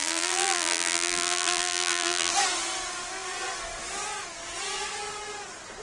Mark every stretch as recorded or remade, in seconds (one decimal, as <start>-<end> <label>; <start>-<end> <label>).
0.0-2.3 remade; 2.3-5.8 recorded